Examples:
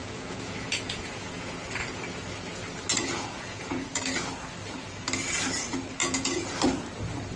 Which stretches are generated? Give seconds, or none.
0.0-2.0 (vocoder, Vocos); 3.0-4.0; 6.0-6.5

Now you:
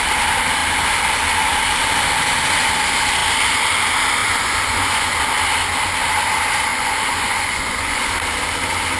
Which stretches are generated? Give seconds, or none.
4.2-5.1 (vocoder, Vocos); 6.7-8.1

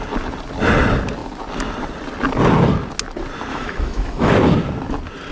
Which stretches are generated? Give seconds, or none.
3.5-4.3 (autoencoder, DAC-VAE)

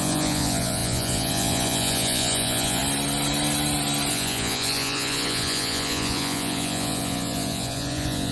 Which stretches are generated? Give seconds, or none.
0.0-2.8 (vocoder, Vocos); 4.1-8.3